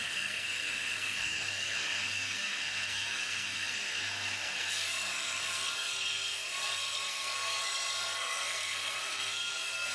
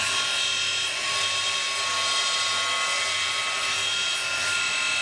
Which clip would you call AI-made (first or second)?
first